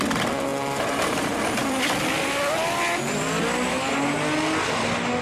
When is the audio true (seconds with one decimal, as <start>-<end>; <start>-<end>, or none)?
0.0-0.5; 1.8-5.2